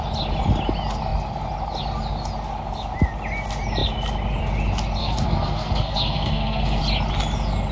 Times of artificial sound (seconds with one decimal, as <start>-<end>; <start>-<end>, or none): 5.0-6.8

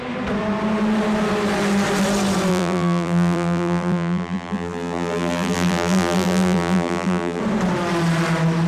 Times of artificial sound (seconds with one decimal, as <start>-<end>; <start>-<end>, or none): 2.5-7.4

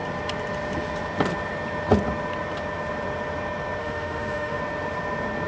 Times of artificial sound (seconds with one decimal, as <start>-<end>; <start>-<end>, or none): 3.8-4.6

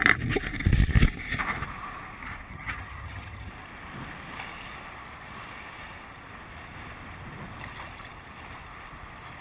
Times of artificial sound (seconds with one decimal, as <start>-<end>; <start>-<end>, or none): 2.5-3.5

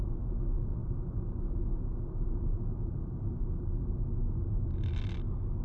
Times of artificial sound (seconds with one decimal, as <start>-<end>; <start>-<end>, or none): none

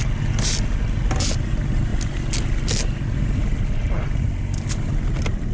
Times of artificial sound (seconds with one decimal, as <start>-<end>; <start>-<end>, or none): none